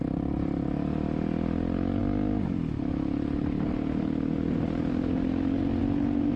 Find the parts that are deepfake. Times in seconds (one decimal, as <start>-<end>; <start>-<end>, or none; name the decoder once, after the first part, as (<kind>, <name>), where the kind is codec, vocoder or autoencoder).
none